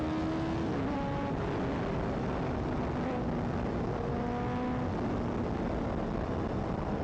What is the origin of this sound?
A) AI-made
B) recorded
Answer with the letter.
B